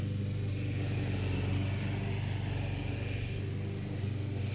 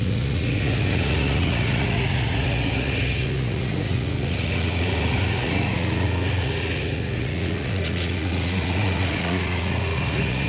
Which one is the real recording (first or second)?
first